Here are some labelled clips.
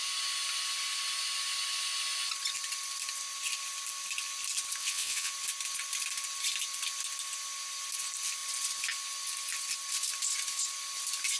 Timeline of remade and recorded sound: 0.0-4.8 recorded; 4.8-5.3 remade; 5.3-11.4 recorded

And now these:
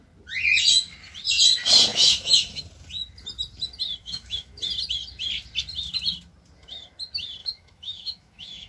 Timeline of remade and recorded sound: 0.0-1.9 recorded; 1.9-2.6 remade; 2.6-4.0 recorded; 4.0-4.6 remade; 4.6-7.4 recorded; 7.4-8.7 remade

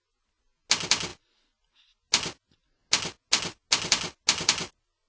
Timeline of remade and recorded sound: 0.0-5.1 recorded

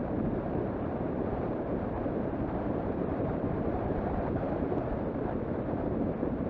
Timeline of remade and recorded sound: 0.0-3.9 remade; 3.9-6.5 recorded